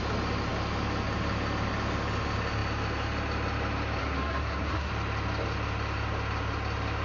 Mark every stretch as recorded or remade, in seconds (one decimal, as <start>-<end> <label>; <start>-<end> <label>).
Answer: 0.0-4.0 recorded; 4.0-4.9 remade; 4.9-7.0 recorded

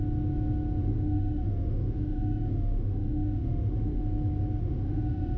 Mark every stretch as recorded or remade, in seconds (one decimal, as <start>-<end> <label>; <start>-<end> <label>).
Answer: 0.0-0.8 recorded; 0.8-4.0 remade; 4.0-4.6 recorded; 4.6-5.4 remade